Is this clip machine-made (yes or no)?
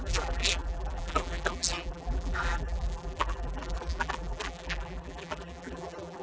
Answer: yes